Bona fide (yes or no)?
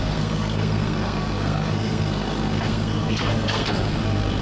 no